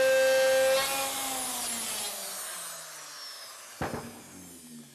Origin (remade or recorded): recorded